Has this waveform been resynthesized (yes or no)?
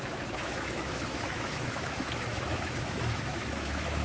yes